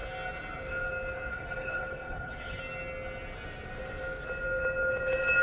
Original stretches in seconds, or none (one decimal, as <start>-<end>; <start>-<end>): 0.0-1.3; 2.6-5.4